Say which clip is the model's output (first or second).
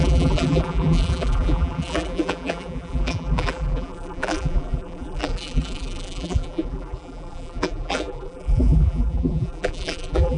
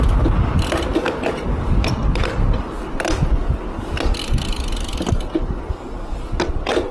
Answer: first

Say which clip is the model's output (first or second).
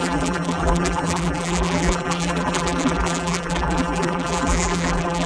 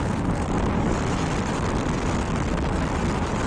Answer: first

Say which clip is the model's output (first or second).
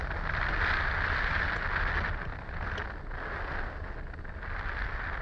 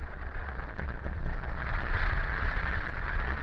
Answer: second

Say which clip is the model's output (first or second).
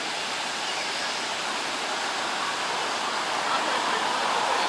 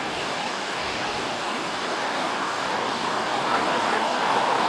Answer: second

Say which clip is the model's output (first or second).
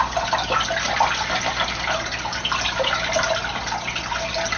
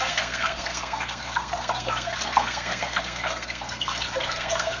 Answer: second